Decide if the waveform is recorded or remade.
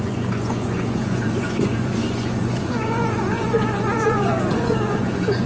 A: remade